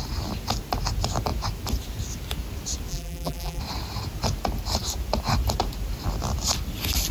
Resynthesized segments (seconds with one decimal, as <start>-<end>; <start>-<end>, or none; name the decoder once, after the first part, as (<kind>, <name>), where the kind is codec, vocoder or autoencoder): 2.9-3.6 (vocoder, BigVGAN v2)